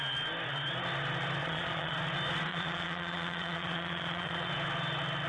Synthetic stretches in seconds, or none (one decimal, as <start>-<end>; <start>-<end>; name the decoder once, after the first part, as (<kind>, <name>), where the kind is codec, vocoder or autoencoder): 1.4-2.0 (vocoder, Vocos); 2.5-4.5